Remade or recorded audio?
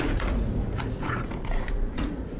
remade